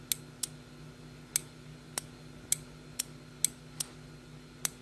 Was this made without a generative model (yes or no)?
yes